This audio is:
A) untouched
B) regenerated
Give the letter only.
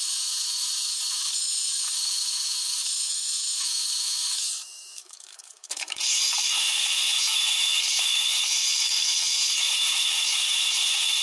B